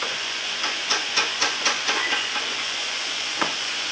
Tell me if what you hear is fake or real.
fake